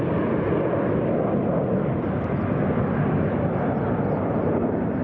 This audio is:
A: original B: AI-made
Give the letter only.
A